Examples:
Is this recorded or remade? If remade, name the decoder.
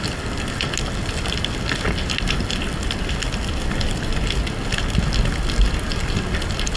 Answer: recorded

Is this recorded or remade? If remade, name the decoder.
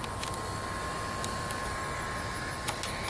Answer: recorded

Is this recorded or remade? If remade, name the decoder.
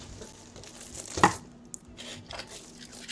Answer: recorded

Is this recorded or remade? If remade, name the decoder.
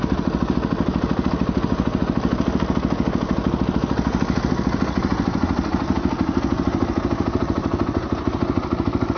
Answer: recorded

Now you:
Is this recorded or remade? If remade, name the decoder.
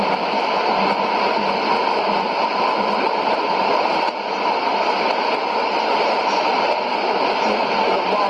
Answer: recorded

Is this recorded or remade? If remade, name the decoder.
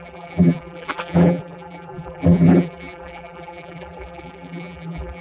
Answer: remade, vocoder, BigVGAN v2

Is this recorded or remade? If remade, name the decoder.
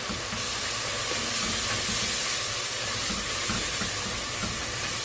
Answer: recorded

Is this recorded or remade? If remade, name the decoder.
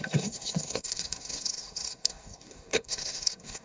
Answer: remade, codec, SNAC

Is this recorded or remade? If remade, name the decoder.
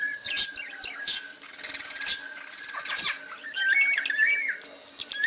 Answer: recorded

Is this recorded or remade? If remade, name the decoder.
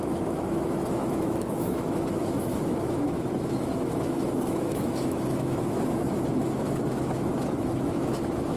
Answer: remade, autoencoder, DAC-VAE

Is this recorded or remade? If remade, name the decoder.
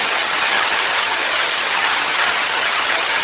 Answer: remade, vocoder, HiFi-GAN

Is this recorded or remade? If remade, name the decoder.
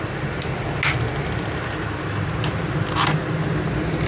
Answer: recorded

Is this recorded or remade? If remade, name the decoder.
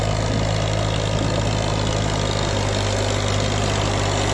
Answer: recorded